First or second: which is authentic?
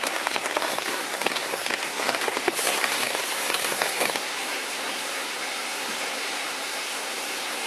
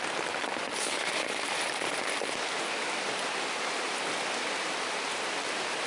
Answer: second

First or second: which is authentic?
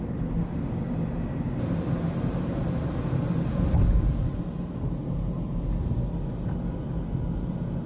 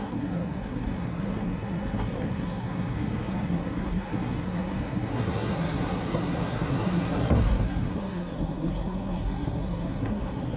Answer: first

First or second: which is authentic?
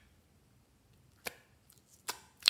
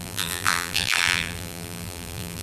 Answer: first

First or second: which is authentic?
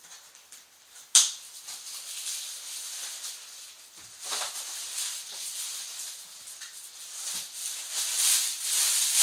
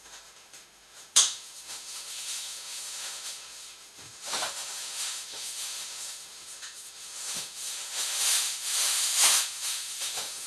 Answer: first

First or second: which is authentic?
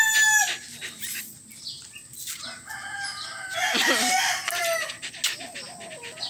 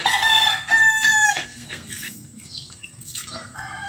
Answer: first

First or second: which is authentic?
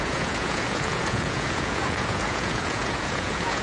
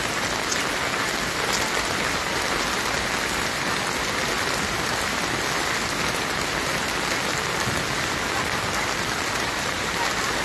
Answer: second